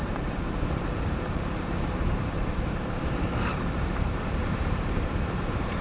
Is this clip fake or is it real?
fake